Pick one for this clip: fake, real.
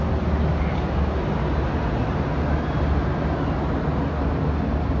real